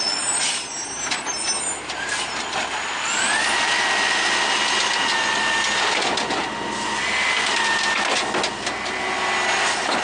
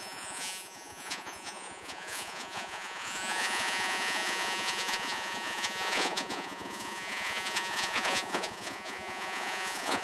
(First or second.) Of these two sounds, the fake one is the second